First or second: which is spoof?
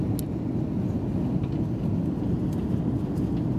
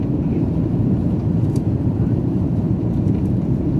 second